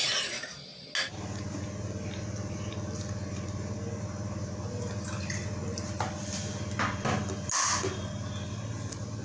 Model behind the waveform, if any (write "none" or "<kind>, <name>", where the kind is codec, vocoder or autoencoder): none